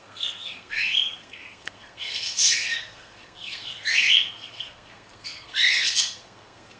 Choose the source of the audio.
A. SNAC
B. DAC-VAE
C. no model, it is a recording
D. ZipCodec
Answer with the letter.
A